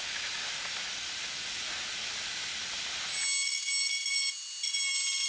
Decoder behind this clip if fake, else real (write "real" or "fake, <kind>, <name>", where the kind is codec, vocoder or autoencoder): real